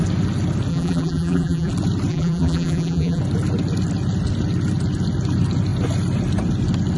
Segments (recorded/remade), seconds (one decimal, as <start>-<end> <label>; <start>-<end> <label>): 0.0-0.7 recorded; 0.7-1.7 remade; 1.7-2.1 recorded; 2.1-3.2 remade; 3.2-7.0 recorded